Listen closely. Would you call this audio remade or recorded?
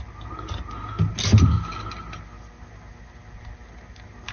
recorded